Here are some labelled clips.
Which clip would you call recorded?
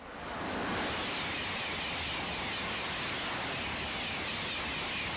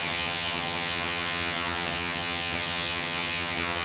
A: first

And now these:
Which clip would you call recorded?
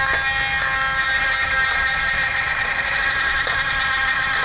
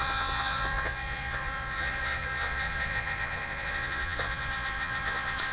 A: first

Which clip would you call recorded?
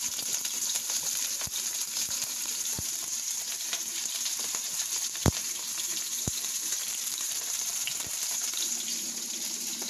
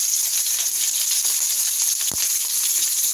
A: second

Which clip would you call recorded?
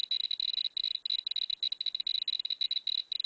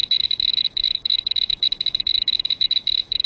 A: first